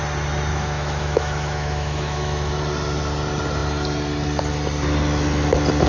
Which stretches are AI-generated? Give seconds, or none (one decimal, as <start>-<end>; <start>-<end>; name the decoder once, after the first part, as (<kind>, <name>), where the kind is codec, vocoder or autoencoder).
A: 0.5-2.5 (autoencoder, DAC-VAE)